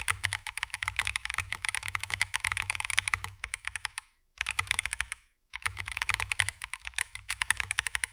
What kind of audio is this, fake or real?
fake